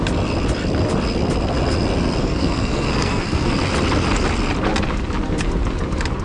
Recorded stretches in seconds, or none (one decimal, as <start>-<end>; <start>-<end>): 0.0-2.2; 3.5-6.2